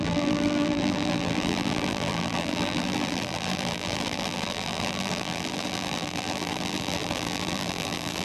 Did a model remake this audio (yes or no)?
yes